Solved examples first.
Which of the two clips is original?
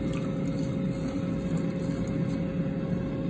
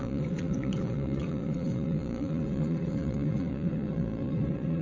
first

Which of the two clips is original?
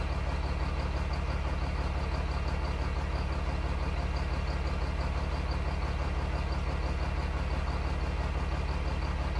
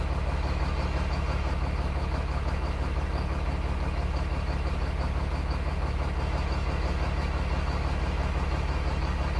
first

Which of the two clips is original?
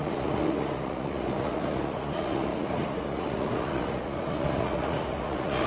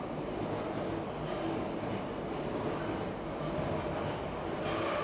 second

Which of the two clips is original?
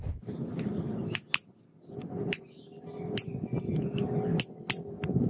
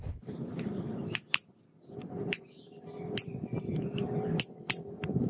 first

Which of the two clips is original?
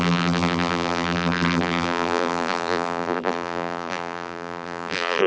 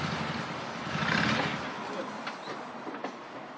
second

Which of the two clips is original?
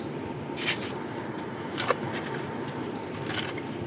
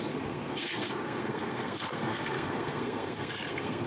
first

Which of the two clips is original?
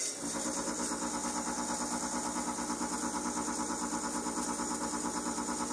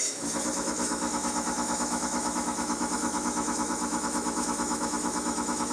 first